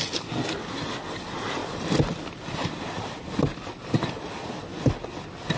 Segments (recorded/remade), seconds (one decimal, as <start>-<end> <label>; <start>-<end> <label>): 0.0-5.6 recorded